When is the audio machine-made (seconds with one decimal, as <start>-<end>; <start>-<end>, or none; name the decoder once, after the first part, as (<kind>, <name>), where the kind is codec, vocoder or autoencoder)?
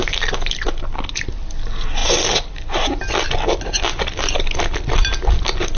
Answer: none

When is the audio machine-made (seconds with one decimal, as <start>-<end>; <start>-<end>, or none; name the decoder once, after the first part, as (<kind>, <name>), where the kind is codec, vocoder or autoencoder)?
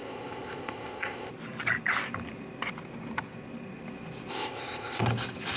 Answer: 0.0-1.3 (codec, ZipCodec); 4.3-5.0